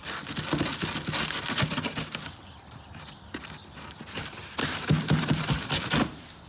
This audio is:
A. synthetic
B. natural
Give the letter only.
B